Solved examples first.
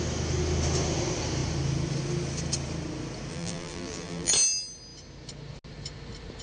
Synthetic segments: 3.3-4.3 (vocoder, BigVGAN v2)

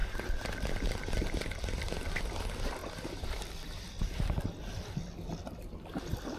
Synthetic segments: 2.8-6.4 (vocoder, BigVGAN v2)

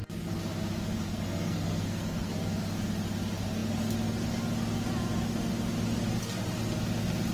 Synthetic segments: 1.1-2.3 (codec, SNAC)

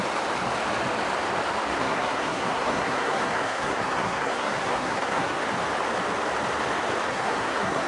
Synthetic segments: 1.8-5.4 (codec, SNAC); 7.1-7.9

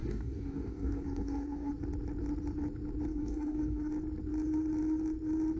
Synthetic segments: 0.0-1.7 (codec, DAC); 3.1-3.9

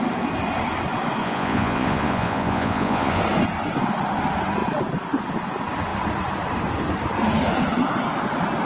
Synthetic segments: 1.2-3.2 (vocoder, Vocos)

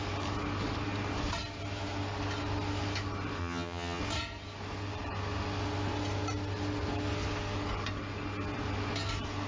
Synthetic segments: 3.4-4.0 (vocoder, HiFi-GAN)

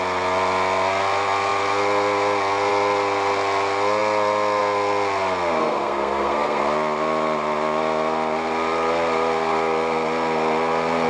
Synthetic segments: 5.6-6.6 (codec, SNAC)